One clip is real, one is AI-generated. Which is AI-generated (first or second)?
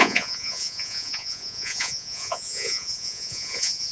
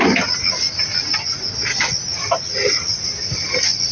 first